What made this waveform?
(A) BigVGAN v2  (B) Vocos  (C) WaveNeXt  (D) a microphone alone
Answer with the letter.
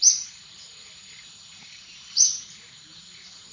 A